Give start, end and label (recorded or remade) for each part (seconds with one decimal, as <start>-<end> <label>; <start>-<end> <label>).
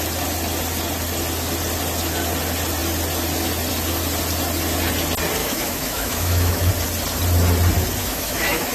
0.0-5.4 recorded; 5.4-6.7 remade; 6.7-8.0 recorded; 8.0-8.7 remade